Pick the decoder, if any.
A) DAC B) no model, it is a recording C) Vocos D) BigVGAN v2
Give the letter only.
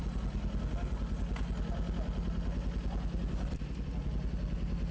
B